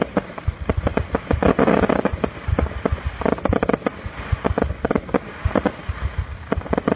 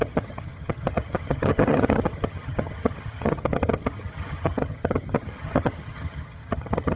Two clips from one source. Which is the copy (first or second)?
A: second